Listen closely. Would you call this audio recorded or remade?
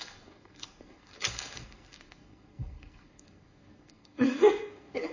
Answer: remade